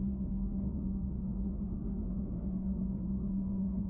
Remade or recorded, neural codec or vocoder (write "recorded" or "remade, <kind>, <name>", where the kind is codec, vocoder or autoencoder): remade, autoencoder, DAC-VAE